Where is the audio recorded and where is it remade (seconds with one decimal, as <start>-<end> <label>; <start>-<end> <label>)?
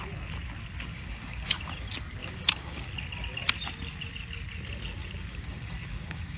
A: 0.0-0.9 recorded; 0.9-1.7 remade; 1.7-2.2 recorded; 2.2-2.9 remade; 2.9-5.0 recorded; 5.0-6.4 remade